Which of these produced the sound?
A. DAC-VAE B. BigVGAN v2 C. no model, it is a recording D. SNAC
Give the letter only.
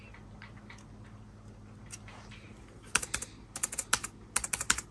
C